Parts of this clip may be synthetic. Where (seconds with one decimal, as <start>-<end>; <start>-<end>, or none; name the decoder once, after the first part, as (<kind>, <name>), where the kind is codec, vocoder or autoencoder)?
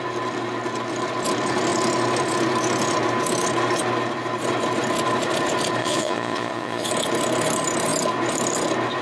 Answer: 5.8-6.9 (vocoder, Vocos)